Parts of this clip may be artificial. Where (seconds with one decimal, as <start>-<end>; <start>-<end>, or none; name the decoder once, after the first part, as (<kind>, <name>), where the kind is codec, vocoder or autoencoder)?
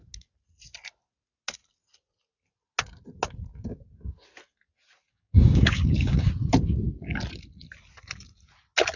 5.1-6.3 (codec, DAC)